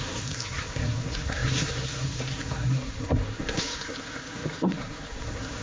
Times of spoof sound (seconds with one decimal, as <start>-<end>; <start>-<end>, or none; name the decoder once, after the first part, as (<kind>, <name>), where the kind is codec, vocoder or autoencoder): 0.0-5.6 (codec, SNAC)